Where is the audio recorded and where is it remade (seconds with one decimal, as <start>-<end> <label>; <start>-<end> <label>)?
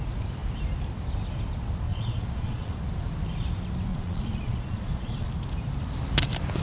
0.0-1.9 recorded; 1.9-2.8 remade; 2.8-3.9 recorded; 3.9-5.3 remade; 5.3-6.6 recorded